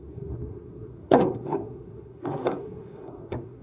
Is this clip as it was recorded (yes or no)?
no